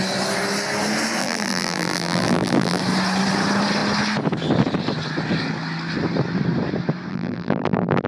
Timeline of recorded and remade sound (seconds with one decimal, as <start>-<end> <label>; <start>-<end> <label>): 0.0-1.2 recorded; 1.2-2.8 remade; 2.8-7.1 recorded; 7.1-8.1 remade